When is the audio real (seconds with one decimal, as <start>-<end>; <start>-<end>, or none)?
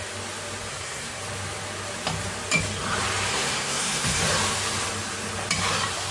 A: 0.0-0.7; 1.2-3.3; 4.2-6.1